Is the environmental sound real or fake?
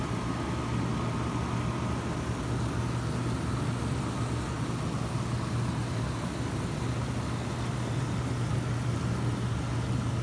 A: real